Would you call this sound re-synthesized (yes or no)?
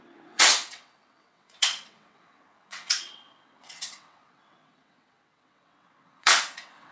yes